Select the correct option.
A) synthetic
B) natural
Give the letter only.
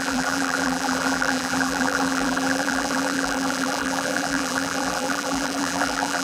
A